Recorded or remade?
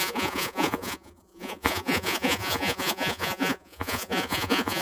remade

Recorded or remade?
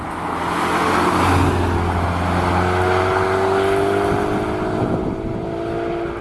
recorded